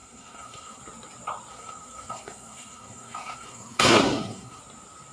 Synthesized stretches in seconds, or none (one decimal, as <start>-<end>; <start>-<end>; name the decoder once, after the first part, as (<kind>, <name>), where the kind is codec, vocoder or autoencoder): 0.0-0.8 (codec, SNAC); 1.5-4.6